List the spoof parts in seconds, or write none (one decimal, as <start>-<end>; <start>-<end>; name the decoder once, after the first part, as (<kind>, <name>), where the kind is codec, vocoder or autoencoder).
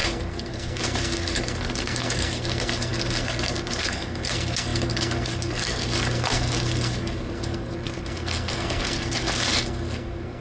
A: 0.0-10.4 (codec, SNAC)